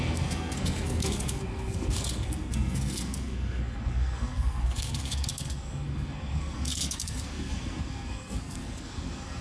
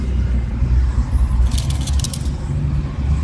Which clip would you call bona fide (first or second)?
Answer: second